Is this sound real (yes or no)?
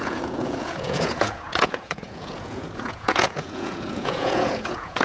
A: no